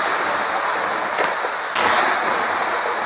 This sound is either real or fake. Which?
real